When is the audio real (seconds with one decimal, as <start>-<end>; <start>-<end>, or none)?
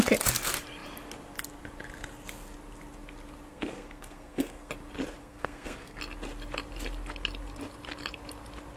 0.0-3.5; 4.7-5.2; 6.0-8.8